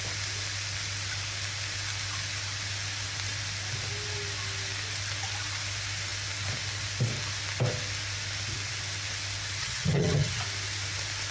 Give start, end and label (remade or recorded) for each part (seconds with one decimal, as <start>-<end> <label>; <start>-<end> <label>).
0.0-9.6 recorded; 9.6-10.4 remade; 10.4-11.3 recorded